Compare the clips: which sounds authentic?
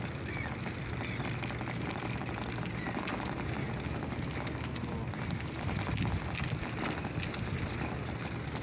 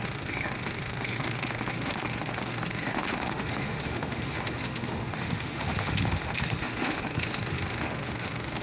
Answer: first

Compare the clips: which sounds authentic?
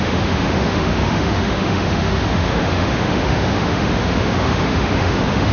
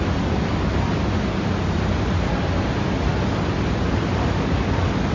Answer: second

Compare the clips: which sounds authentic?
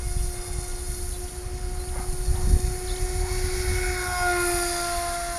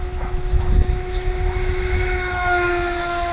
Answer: first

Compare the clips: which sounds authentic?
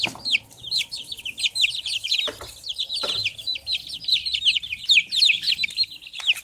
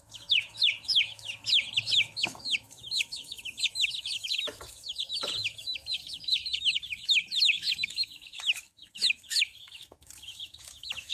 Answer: first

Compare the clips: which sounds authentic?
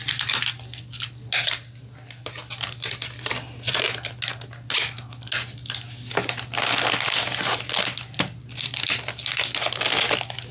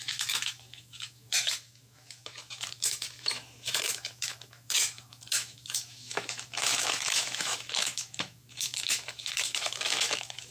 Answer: first